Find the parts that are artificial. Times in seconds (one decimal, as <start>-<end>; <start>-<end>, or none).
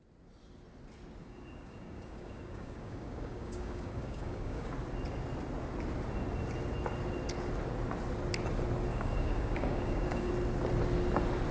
1.2-4.7; 8.9-10.3